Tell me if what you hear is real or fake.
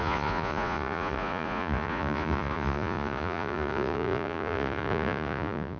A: fake